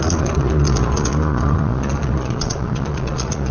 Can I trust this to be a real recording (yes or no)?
no